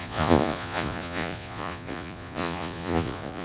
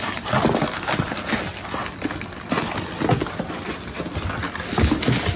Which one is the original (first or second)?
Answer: second